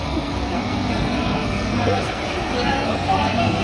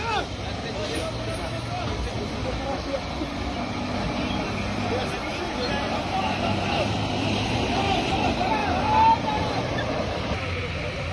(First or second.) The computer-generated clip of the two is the first